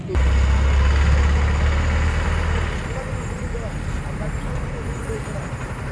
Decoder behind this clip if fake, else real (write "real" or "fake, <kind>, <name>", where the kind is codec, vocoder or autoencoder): real